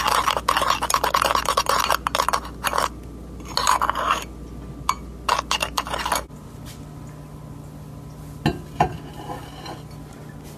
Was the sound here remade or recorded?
recorded